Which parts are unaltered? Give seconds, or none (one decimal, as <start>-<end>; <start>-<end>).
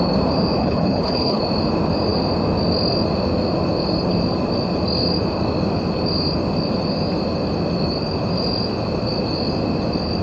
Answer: 0.0-0.6; 1.4-10.2